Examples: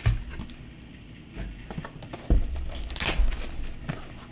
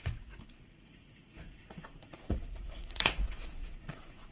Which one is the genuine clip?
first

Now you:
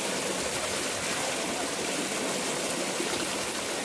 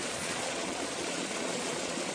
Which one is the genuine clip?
first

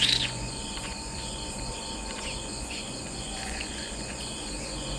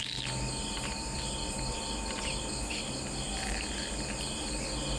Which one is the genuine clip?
second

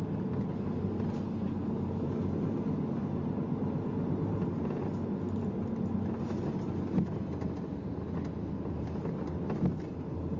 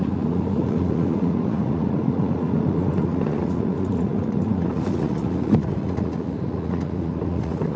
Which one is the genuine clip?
first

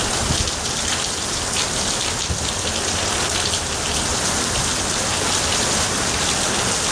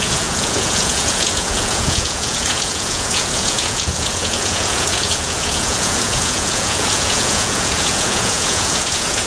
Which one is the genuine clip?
first